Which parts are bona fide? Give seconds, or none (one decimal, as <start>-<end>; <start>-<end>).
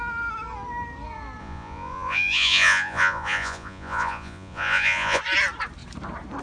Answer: 0.0-1.4; 5.2-6.4